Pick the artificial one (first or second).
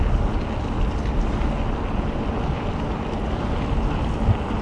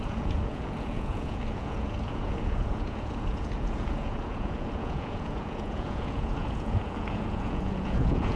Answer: second